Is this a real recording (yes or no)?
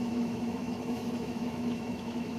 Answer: no